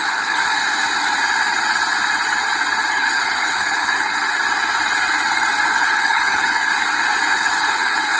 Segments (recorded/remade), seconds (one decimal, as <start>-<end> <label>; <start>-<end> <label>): 0.0-0.6 remade; 0.6-2.9 recorded; 2.9-4.2 remade; 4.2-5.7 recorded; 5.7-6.7 remade; 6.7-7.3 recorded; 7.3-8.2 remade